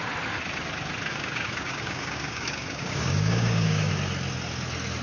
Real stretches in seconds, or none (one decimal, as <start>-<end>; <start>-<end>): 0.0-1.1; 3.9-5.0